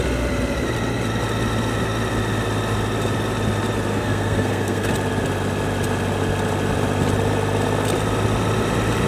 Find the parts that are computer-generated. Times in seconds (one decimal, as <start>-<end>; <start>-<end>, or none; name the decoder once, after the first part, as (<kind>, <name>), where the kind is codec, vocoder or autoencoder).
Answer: 3.9-4.9 (codec, SNAC)

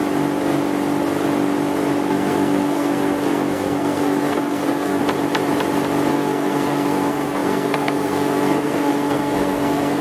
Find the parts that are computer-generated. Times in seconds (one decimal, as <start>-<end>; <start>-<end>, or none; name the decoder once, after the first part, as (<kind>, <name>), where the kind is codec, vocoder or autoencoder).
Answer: 2.1-5.0 (codec, SNAC); 6.1-10.0

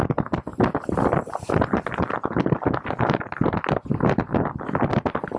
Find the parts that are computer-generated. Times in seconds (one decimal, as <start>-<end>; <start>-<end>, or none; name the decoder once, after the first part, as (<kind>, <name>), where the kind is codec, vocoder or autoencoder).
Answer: none

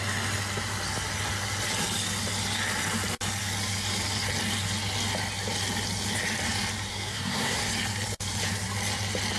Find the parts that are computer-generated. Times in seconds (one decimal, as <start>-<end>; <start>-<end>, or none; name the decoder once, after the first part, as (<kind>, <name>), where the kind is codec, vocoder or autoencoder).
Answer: 6.9-7.7 (codec, SNAC)

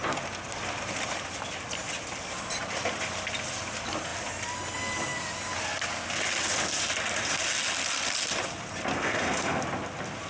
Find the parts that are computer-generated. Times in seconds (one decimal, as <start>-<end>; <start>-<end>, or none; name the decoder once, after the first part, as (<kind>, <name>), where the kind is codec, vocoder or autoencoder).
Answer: 8.9-9.6 (codec, SNAC)

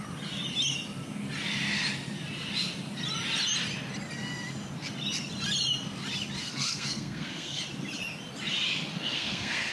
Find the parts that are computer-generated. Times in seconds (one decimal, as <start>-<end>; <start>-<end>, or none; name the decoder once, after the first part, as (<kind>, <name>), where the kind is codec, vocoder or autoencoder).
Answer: 6.4-7.6 (codec, SNAC); 8.9-9.7

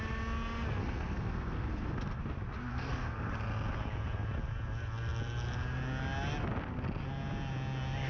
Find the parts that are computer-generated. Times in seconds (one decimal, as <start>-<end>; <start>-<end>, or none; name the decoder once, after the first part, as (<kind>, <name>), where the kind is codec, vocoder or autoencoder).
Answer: 0.8-2.2 (codec, SNAC); 2.7-3.3